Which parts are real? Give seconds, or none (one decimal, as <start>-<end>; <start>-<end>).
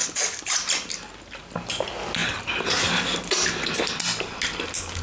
0.0-5.0